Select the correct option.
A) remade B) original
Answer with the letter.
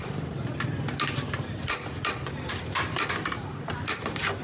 B